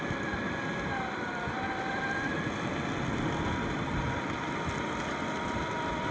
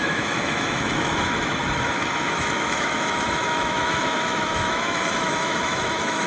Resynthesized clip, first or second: second